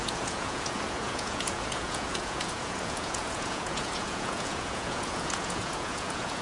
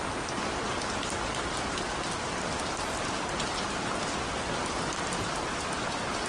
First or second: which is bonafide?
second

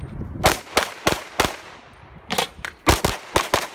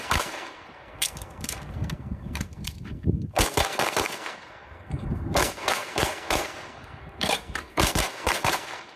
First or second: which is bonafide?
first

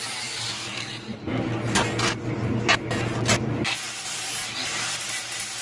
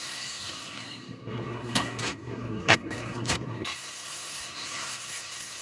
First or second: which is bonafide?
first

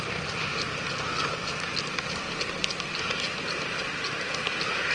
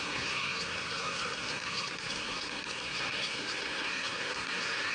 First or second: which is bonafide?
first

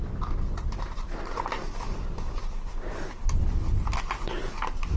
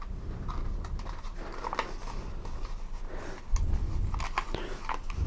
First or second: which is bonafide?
second